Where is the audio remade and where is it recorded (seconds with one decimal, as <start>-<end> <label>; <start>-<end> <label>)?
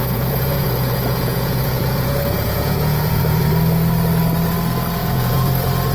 0.0-3.5 remade; 3.5-5.0 recorded; 5.0-5.5 remade; 5.5-5.9 recorded